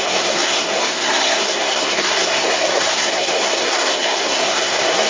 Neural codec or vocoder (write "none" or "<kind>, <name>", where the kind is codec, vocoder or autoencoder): codec, SNAC